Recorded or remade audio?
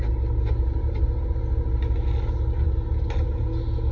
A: recorded